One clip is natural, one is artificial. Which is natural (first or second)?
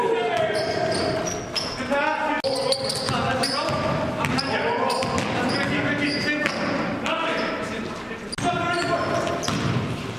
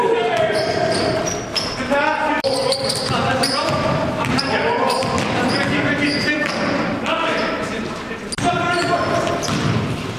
first